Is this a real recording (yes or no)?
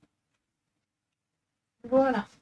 yes